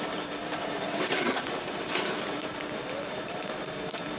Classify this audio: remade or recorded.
remade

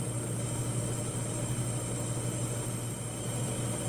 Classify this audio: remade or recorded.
recorded